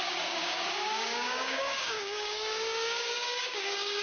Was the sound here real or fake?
fake